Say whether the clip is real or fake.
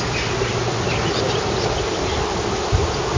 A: real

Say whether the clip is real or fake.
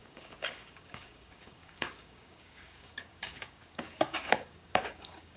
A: fake